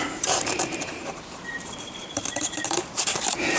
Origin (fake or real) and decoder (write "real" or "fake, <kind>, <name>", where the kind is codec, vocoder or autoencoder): fake, vocoder, BigVGAN v2